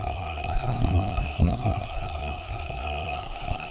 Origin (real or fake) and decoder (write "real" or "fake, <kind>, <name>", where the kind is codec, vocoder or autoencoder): fake, codec, SNAC